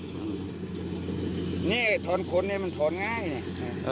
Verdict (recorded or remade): recorded